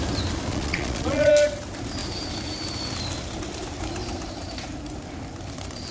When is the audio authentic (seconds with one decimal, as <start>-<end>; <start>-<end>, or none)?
0.0-0.5; 1.3-5.9

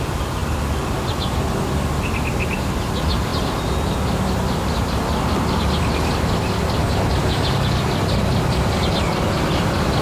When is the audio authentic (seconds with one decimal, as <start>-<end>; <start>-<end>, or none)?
0.0-10.0

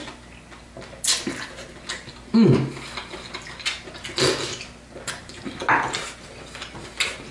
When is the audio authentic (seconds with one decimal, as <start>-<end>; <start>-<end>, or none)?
0.0-7.3

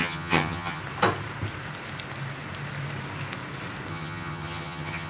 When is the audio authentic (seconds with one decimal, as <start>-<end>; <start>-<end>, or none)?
0.8-3.9

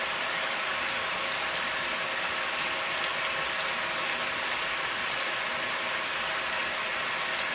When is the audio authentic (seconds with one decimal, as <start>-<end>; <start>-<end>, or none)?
0.0-7.5